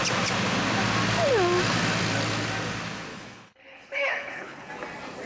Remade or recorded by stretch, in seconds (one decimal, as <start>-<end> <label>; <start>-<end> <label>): 0.0-3.1 recorded; 3.1-4.7 remade; 4.7-5.3 recorded